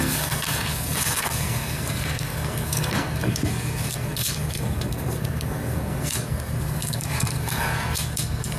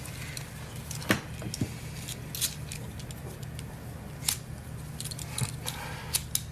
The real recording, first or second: second